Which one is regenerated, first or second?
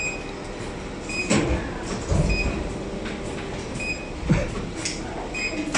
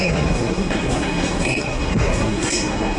second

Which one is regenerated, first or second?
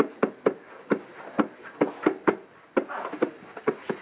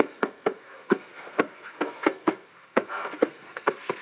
second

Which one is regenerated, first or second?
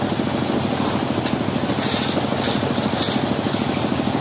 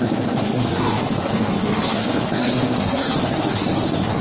second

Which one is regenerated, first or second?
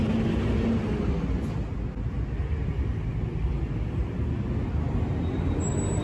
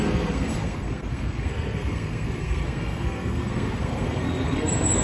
second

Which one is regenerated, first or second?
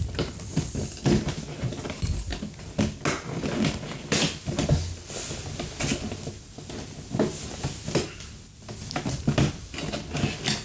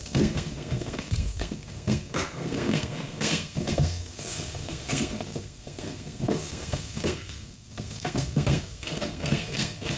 second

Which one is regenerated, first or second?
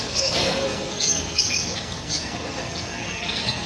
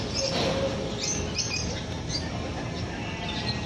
first